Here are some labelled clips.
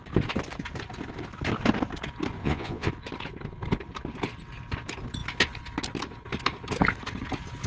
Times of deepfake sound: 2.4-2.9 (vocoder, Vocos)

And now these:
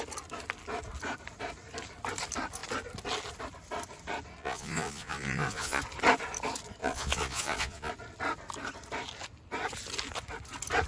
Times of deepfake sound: 4.4-5.8 (vocoder, Vocos); 6.8-7.9

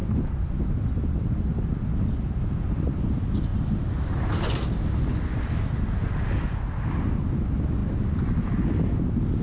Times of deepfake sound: 0.0-0.7 (vocoder, BigVGAN v2)